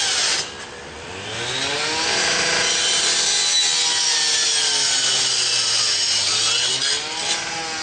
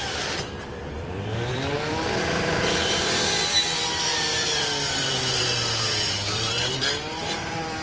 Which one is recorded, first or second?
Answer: first